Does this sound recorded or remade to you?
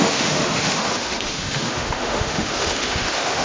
remade